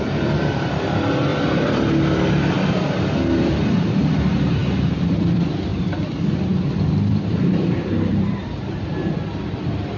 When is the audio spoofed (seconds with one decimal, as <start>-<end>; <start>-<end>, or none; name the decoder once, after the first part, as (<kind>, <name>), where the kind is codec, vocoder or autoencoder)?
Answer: 0.0-10.0 (vocoder, BigVGAN v2)